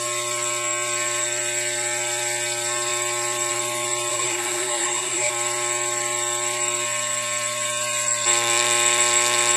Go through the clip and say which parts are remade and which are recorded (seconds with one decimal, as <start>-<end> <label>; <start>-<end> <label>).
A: 0.0-4.1 recorded; 4.1-5.3 remade; 5.3-9.6 recorded